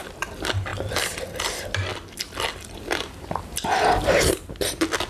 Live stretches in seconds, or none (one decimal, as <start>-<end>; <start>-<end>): 1.9-2.5